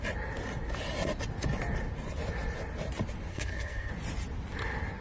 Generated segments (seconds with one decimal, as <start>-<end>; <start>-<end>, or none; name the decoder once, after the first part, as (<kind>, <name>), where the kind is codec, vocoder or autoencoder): 3.3-3.9 (codec, SNAC)